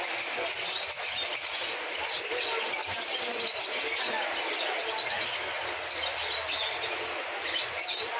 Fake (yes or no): no